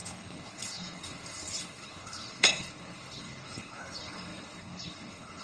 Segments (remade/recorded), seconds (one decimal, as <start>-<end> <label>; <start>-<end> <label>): 0.0-5.4 remade